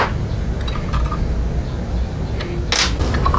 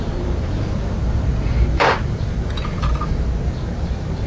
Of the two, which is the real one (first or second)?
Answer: first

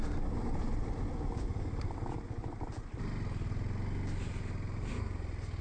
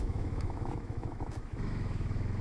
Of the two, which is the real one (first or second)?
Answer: first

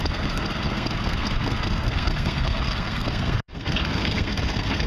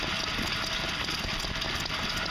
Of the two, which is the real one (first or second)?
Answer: second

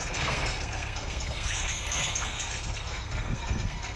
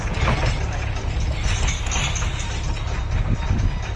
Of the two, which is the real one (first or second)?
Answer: second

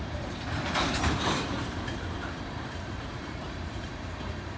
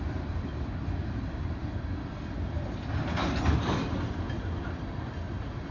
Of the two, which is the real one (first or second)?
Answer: second